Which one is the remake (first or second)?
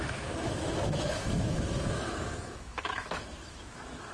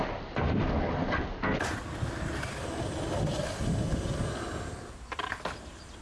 first